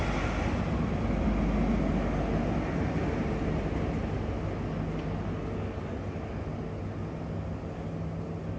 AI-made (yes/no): no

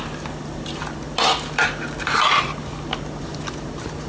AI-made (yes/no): no